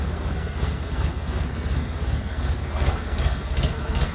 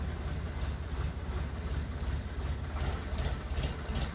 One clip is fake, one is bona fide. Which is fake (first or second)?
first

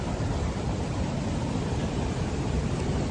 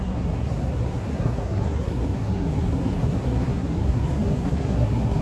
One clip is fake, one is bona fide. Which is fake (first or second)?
second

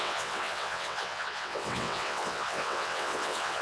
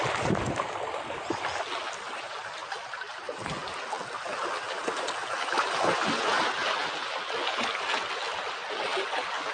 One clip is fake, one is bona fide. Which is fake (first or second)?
first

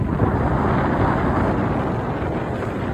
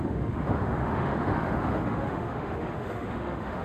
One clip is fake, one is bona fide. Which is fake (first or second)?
second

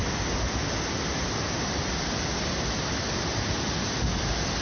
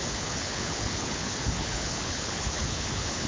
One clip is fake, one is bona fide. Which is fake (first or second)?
second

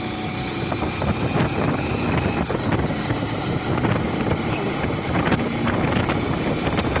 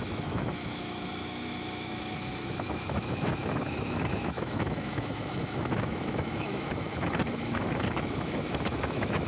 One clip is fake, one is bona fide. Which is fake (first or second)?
second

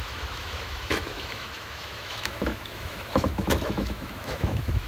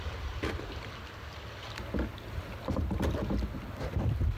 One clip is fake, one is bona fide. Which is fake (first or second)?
first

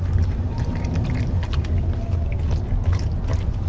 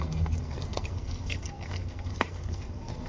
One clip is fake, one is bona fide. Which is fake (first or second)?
second